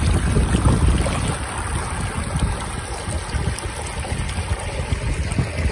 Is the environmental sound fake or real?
real